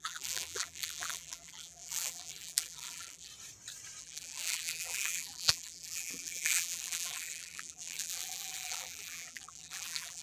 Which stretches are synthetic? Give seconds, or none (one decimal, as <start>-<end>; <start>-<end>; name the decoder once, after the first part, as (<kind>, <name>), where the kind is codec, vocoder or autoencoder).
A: 0.0-3.3 (vocoder, BigVGAN v2); 4.0-10.2